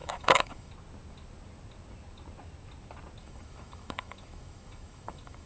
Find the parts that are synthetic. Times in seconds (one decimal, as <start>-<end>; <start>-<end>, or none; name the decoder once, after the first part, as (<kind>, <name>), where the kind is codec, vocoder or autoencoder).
0.0-0.7 (autoencoder, DAC-VAE); 3.2-5.5